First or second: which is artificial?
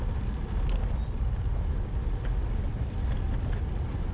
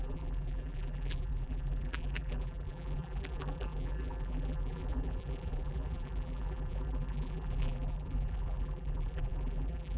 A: second